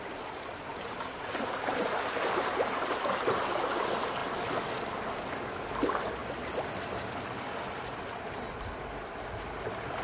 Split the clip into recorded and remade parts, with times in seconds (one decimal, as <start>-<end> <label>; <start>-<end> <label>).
0.0-0.5 recorded; 0.5-3.4 remade; 3.4-10.0 recorded